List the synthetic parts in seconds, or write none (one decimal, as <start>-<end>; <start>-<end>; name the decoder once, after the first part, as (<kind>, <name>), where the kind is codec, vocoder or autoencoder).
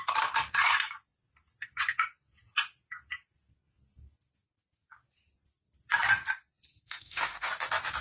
6.7-7.5 (autoencoder, DAC-VAE)